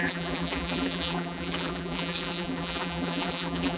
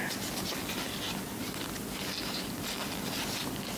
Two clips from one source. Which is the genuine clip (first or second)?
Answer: second